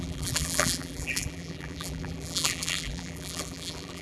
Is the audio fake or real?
fake